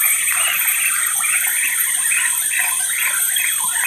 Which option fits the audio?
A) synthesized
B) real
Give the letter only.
B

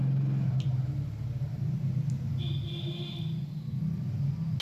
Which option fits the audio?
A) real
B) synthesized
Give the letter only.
A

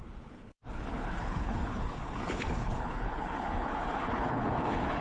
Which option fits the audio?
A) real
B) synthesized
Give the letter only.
B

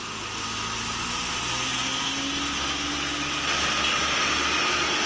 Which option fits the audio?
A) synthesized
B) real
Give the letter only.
B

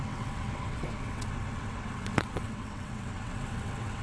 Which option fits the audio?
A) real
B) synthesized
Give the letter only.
B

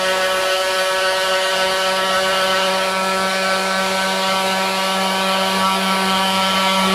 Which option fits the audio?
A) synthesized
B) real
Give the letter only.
A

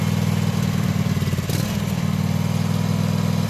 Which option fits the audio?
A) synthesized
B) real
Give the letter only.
B